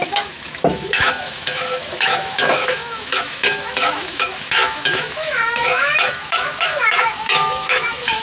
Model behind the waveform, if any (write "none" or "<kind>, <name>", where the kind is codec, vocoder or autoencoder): autoencoder, DAC-VAE